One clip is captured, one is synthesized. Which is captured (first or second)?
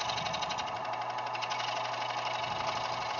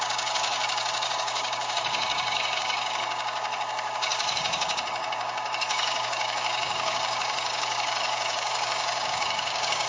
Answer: first